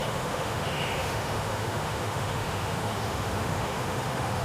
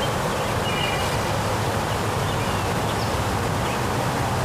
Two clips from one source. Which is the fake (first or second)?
first